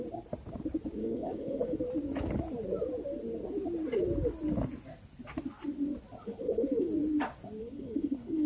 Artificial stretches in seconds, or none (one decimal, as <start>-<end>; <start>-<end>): 1.0-1.8; 6.2-6.9; 7.6-8.5